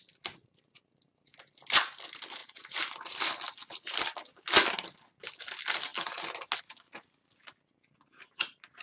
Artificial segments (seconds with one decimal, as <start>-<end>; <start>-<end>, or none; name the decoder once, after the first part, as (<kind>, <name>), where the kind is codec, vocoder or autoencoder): 2.4-2.9 (vocoder, BigVGAN v2)